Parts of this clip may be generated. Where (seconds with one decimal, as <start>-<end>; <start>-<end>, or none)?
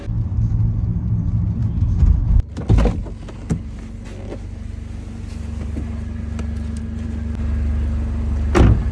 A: none